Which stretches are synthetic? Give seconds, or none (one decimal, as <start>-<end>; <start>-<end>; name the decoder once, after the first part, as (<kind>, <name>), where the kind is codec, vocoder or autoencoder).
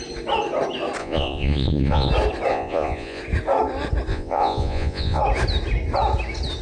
1.0-2.1 (vocoder, Vocos); 2.5-3.2; 4.1-5.2